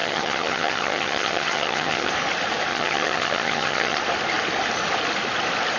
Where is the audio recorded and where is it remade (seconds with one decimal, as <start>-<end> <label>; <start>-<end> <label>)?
0.0-2.1 remade; 2.1-2.7 recorded; 2.7-4.0 remade; 4.0-5.8 recorded